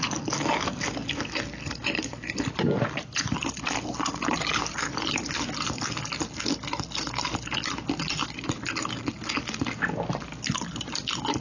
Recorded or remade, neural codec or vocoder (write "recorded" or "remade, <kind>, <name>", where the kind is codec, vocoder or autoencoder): recorded